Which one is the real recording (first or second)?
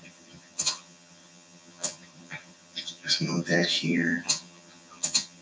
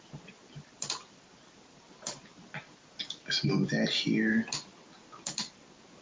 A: second